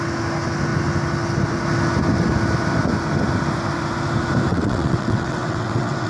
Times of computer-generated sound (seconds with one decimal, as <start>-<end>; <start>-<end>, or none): 4.5-6.1